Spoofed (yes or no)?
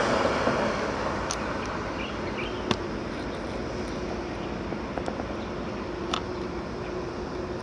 no